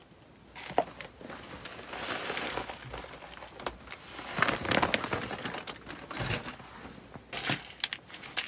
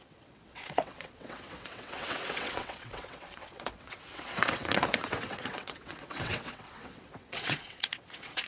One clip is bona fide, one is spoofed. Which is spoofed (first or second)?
second